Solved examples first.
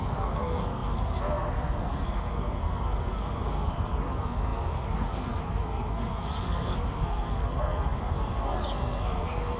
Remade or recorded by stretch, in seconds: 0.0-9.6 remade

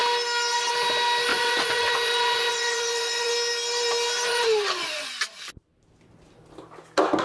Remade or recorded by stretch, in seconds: 0.0-1.3 recorded; 1.3-3.3 remade; 3.3-4.3 recorded; 4.3-5.1 remade; 5.1-7.2 recorded

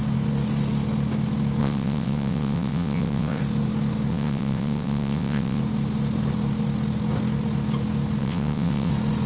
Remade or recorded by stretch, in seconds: 0.0-1.6 recorded; 1.6-3.4 remade; 3.4-4.1 recorded; 4.1-5.6 remade; 5.6-8.2 recorded; 8.2-8.9 remade; 8.9-9.3 recorded

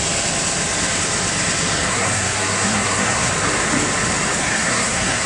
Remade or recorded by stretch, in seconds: 0.0-1.9 recorded; 1.9-3.3 remade; 3.3-4.4 recorded; 4.4-5.3 remade

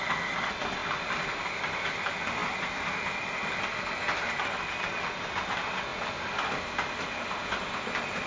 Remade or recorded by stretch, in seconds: 0.0-8.3 recorded

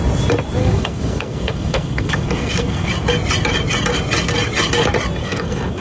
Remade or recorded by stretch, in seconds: 0.0-0.6 recorded; 0.6-2.9 remade; 2.9-5.2 recorded; 5.2-5.8 remade